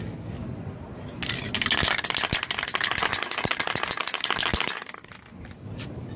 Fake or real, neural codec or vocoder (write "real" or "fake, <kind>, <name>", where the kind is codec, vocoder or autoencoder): real